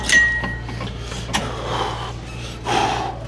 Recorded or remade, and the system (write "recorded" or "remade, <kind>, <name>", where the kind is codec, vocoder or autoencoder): recorded